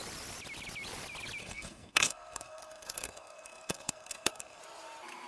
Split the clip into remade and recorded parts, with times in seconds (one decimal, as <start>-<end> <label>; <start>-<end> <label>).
0.0-1.4 recorded; 1.4-4.6 remade; 4.6-5.3 recorded